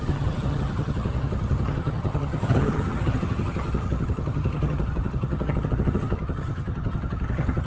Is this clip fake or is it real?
fake